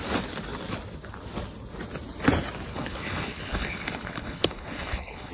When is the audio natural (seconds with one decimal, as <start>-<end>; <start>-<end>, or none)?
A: 0.0-2.7